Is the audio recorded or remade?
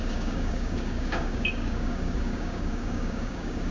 remade